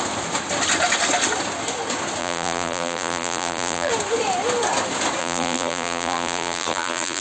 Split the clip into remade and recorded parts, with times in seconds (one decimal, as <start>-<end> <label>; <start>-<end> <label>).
0.0-2.2 recorded; 2.2-3.9 remade; 3.9-5.2 recorded; 5.2-7.2 remade